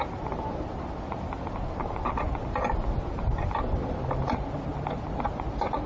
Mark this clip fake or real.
real